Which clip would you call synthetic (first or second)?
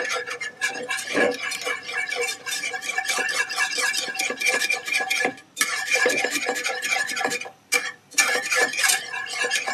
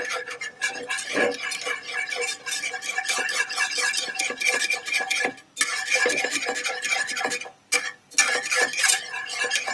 first